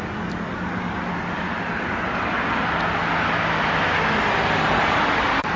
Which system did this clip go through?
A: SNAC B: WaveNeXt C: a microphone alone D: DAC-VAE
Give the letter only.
C